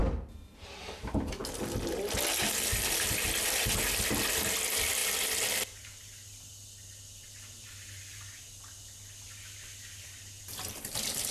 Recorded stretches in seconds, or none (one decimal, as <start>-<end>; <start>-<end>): 0.0-11.3